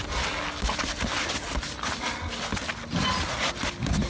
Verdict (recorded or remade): recorded